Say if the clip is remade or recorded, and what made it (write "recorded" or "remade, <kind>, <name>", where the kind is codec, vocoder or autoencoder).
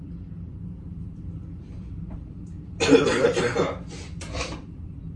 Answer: remade, vocoder, BigVGAN v2